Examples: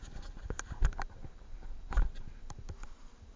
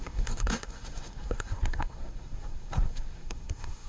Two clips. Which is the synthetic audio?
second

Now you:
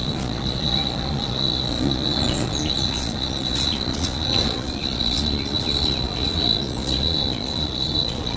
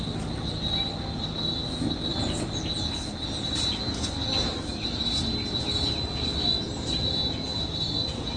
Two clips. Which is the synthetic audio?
first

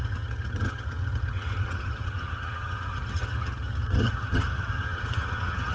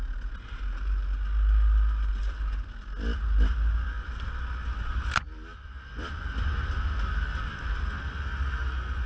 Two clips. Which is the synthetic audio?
first